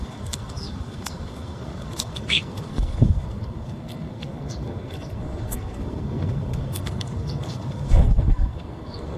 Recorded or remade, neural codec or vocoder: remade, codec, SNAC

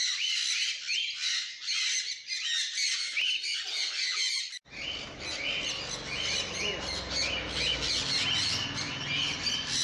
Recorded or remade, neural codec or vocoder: recorded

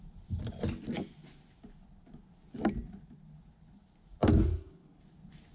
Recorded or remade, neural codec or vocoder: recorded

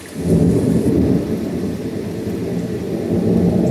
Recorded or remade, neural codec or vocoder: recorded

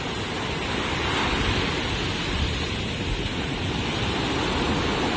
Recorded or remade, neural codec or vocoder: recorded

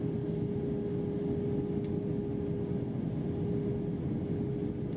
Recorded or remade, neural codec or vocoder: recorded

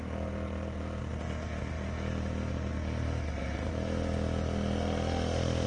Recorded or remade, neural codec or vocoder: recorded